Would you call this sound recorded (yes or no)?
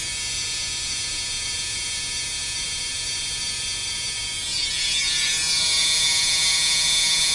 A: no